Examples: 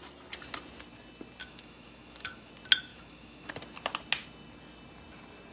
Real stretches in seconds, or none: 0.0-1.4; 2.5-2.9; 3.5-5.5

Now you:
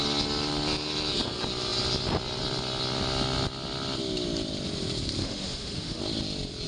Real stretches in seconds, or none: 0.0-5.2; 6.0-6.7

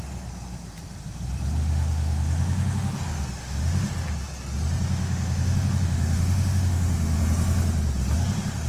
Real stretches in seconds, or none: 0.0-1.6; 3.0-3.4; 3.9-5.0; 7.2-8.7

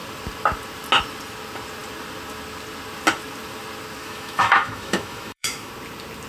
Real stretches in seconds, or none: 0.0-4.0; 5.7-6.3

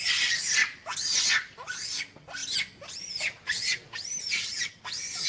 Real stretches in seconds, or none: 0.0-5.3